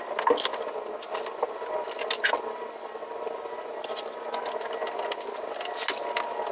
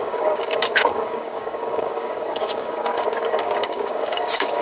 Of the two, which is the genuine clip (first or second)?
first